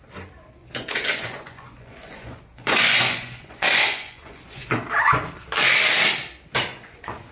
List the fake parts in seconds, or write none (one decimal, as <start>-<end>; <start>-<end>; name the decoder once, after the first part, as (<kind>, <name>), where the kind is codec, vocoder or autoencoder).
0.6-4.8 (vocoder, Vocos); 6.7-7.3